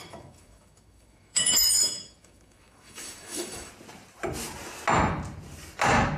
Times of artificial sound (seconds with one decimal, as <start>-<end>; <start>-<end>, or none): 0.0-3.7